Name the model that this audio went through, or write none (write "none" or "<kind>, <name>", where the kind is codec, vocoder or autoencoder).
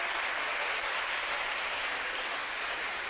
none